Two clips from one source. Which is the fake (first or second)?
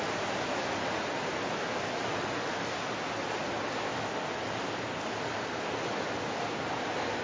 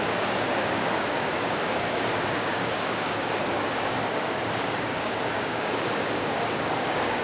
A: second